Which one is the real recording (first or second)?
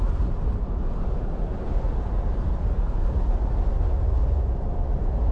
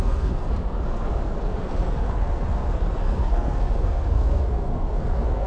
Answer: first